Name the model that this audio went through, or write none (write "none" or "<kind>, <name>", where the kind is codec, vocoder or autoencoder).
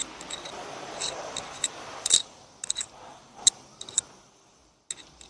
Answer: none